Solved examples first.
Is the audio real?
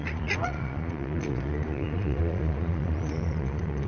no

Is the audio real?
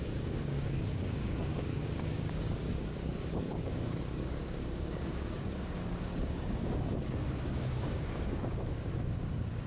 no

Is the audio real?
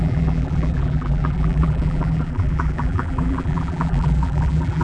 no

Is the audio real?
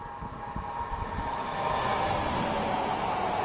yes